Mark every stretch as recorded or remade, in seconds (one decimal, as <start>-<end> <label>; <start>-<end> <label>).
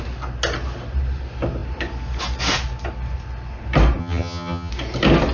0.0-4.0 recorded; 4.0-4.7 remade; 4.7-5.3 recorded